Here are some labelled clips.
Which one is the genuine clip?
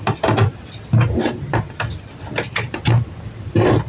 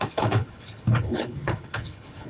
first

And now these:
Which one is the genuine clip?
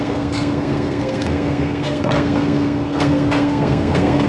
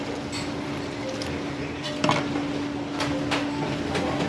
second